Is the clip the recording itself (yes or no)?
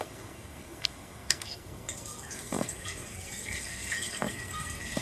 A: no